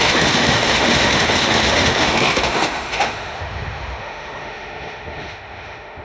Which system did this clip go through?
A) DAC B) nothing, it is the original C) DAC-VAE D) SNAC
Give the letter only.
C